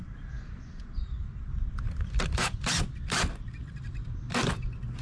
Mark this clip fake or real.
fake